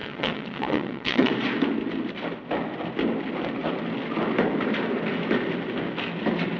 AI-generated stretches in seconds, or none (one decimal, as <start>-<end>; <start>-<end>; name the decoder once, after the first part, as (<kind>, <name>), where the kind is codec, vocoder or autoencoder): 0.0-1.3 (vocoder, WaveNeXt)